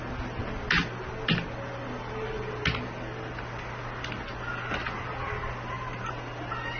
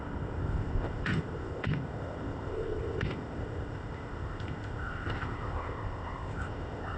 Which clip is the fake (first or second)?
second